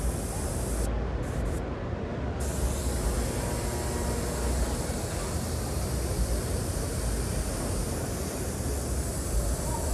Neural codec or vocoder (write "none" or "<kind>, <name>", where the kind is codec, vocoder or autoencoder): none